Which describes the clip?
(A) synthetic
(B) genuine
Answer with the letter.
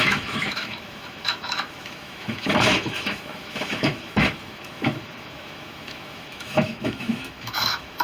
A